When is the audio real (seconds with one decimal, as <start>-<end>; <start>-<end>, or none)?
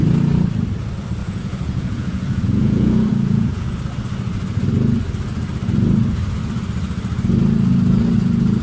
0.0-1.2; 3.7-8.6